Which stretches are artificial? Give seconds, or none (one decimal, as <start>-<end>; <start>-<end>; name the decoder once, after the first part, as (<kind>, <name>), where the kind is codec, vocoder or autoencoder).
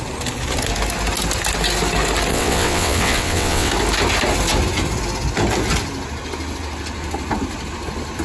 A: 2.3-3.7 (vocoder, WaveNeXt)